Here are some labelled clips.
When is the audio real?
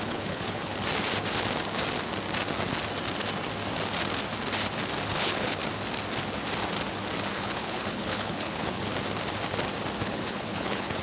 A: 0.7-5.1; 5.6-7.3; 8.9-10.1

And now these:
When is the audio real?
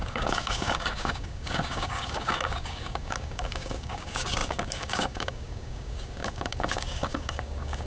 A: none